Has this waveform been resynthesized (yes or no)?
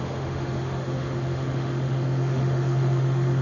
yes